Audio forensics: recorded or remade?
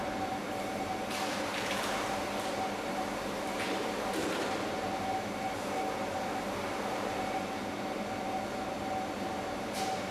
remade